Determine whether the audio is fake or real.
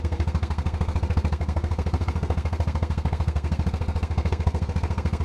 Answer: fake